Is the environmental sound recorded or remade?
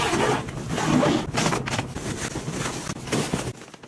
recorded